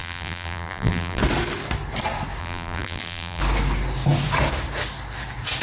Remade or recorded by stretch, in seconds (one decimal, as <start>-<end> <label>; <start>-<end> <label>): 0.0-1.2 remade; 1.2-2.4 recorded; 2.4-3.4 remade; 3.4-5.6 recorded